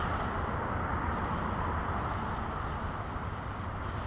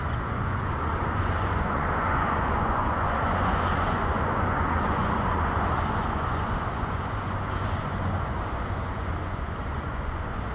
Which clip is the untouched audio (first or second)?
first